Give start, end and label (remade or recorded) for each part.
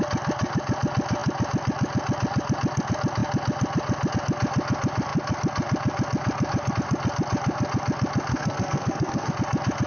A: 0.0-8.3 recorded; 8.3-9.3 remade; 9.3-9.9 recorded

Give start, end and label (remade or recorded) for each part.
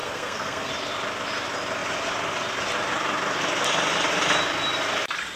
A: 0.0-0.7 remade; 0.7-5.4 recorded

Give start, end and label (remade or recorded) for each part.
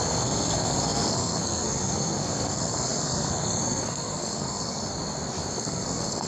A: 0.0-4.8 remade; 4.8-5.5 recorded; 5.5-6.3 remade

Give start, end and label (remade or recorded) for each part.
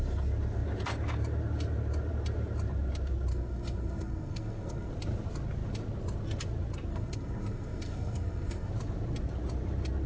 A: 0.0-3.3 recorded; 3.3-4.9 remade; 4.9-6.9 recorded; 6.9-8.7 remade; 8.7-10.1 recorded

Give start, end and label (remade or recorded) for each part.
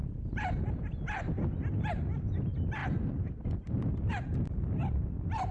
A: 0.0-5.5 recorded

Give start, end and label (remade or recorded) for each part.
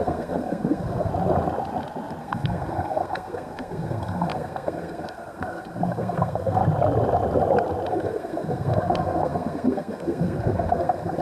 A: 0.0-1.1 remade; 1.1-2.2 recorded; 2.2-6.6 remade; 6.6-7.9 recorded; 7.9-11.2 remade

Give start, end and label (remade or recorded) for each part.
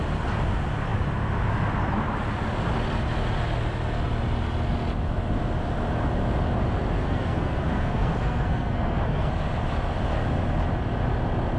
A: 0.0-7.0 recorded; 7.0-9.3 remade; 9.3-11.6 recorded